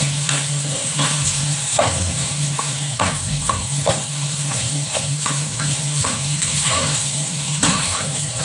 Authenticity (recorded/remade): remade